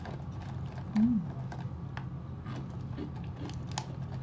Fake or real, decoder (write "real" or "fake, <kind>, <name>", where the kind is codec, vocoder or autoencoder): real